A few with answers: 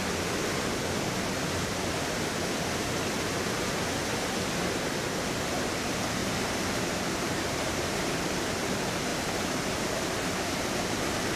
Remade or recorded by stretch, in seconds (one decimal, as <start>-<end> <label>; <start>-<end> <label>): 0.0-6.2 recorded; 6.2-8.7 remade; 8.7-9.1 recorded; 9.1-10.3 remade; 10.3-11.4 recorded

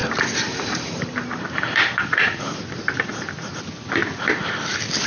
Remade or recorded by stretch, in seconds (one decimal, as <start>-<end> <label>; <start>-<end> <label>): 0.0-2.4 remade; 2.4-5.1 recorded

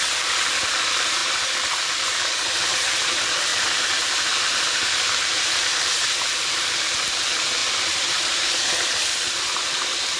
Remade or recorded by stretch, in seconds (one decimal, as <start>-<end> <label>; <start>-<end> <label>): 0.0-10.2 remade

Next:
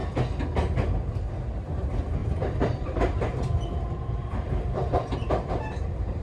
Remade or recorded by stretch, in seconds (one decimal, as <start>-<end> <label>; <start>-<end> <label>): 0.0-2.2 recorded; 2.2-6.2 remade

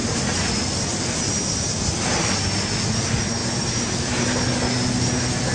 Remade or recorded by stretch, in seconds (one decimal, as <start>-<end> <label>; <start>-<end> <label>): 0.0-0.5 remade; 0.5-3.4 recorded; 3.4-4.2 remade; 4.2-5.5 recorded

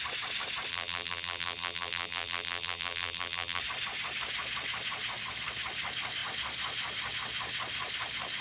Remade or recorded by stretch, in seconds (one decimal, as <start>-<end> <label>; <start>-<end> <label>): 0.0-0.7 recorded; 0.7-3.6 remade; 3.6-8.4 recorded

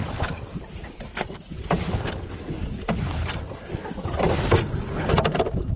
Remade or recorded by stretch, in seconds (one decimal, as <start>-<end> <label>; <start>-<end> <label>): 0.0-1.5 remade; 1.5-5.8 recorded

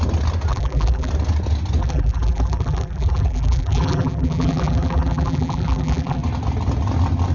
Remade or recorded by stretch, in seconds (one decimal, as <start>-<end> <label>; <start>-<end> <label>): 0.0-0.5 recorded; 0.5-1.1 remade; 1.1-1.8 recorded; 1.8-6.2 remade; 6.2-7.3 recorded